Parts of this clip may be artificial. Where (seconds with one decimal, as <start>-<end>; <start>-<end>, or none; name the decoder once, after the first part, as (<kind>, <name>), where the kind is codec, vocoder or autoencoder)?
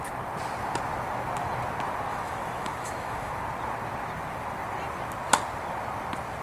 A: 2.1-3.3 (autoencoder, DAC-VAE)